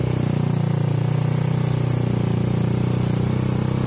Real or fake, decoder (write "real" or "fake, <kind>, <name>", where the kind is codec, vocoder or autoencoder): real